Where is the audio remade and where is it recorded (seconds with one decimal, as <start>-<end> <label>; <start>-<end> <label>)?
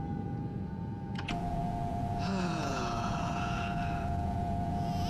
0.0-5.1 remade